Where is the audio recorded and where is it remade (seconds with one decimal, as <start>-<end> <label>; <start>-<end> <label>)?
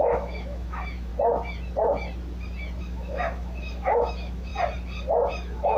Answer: 0.0-1.1 remade; 1.1-2.8 recorded; 2.8-4.5 remade; 4.5-5.3 recorded; 5.3-5.8 remade